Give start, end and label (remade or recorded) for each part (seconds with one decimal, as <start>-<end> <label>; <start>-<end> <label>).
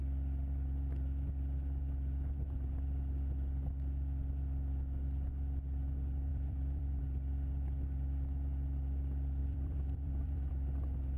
0.0-6.3 recorded; 6.3-7.0 remade; 7.0-9.4 recorded; 9.4-10.5 remade; 10.5-11.2 recorded